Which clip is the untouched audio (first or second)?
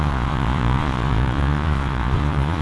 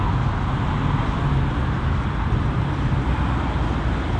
second